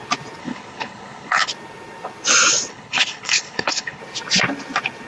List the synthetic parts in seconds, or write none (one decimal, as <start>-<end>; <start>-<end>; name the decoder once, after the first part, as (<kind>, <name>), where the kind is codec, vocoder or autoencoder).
0.4-1.5 (codec, HILCodec); 2.7-4.0